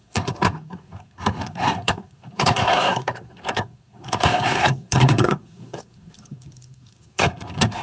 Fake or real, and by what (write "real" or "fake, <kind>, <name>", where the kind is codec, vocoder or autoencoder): fake, codec, SNAC